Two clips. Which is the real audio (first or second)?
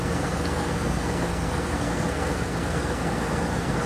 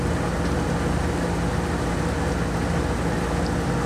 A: second